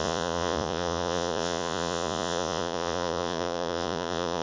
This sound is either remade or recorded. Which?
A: remade